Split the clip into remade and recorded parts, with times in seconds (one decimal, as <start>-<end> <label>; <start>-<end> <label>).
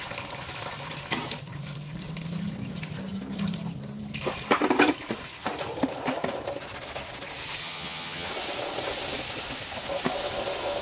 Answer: 0.0-7.6 recorded; 7.6-8.3 remade; 8.3-10.8 recorded